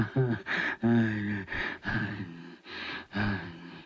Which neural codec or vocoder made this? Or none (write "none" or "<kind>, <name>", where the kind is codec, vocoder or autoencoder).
none